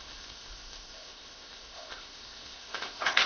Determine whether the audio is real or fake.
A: fake